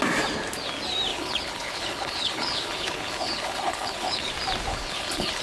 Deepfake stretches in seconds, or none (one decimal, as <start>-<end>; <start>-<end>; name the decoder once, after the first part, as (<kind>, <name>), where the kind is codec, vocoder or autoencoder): 1.1-4.3 (codec, HILCodec); 4.7-5.4